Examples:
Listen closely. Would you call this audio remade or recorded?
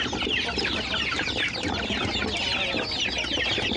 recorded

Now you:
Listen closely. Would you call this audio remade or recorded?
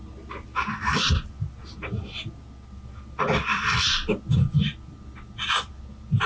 recorded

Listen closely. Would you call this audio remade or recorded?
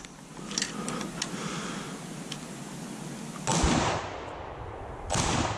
recorded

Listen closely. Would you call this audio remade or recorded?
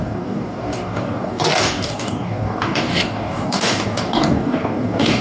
remade